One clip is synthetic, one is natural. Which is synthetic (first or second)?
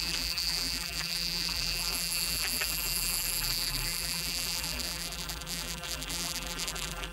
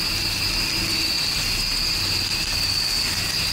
first